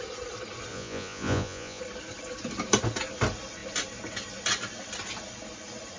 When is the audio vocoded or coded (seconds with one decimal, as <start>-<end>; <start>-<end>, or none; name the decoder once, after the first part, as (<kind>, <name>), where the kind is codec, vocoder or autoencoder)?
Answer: 0.7-1.8 (vocoder, Vocos)

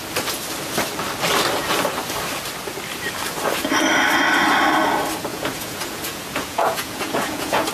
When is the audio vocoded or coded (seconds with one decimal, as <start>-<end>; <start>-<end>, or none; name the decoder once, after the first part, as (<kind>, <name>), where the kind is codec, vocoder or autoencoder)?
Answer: 5.3-7.7 (vocoder, Vocos)

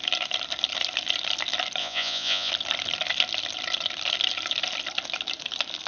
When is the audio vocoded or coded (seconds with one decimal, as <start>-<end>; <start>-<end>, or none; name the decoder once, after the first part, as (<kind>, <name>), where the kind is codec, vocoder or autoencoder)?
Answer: 1.8-2.5 (vocoder, Vocos)

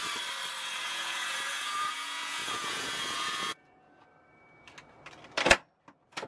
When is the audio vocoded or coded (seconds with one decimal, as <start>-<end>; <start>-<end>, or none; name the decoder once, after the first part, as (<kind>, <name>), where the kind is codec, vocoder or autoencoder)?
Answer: 0.8-4.0 (vocoder, Vocos)

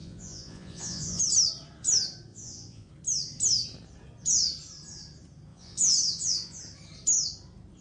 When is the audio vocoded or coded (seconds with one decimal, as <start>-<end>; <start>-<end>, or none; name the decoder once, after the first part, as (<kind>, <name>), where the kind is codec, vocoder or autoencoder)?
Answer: 0.0-1.2 (vocoder, Vocos); 2.3-2.9; 5.5-6.6